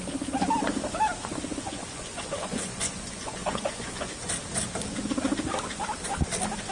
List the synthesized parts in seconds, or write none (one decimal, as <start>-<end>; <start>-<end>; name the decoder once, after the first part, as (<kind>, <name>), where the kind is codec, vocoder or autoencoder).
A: 1.5-4.3 (vocoder, Vocos)